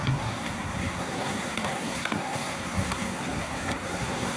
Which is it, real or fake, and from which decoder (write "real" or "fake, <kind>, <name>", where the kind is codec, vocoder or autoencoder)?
fake, codec, SNAC